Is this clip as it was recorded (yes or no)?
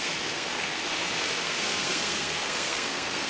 no